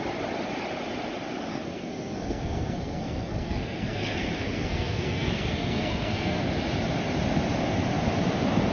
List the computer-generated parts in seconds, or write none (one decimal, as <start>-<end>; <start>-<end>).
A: 1.5-6.4